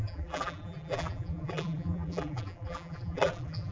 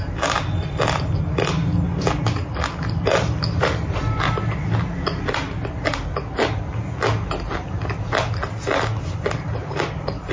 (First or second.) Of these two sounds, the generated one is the first